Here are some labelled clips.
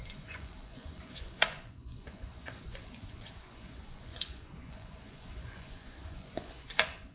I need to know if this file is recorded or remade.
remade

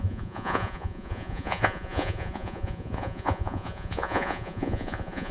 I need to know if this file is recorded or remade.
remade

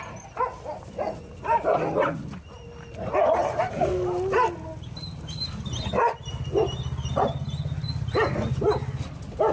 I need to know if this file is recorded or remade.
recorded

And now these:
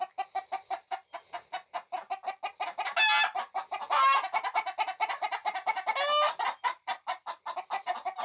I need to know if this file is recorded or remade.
recorded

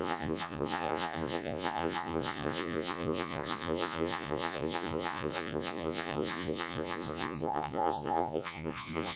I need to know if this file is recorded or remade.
remade